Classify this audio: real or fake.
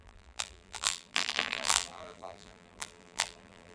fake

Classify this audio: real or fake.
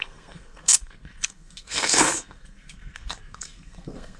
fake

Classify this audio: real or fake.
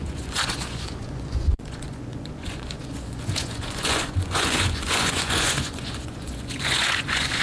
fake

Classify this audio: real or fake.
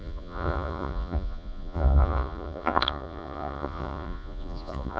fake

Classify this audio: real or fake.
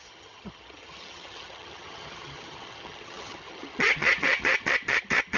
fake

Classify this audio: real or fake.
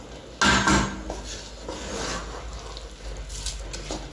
real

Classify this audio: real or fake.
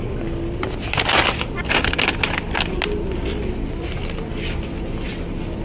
real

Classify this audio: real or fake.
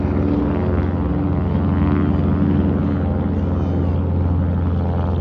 real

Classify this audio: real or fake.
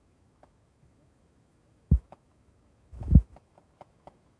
fake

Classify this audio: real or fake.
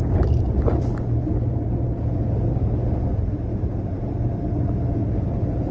real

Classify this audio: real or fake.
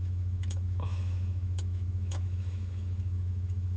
fake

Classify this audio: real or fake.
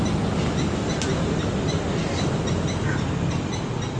real